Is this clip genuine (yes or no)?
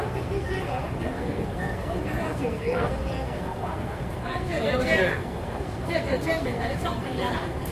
no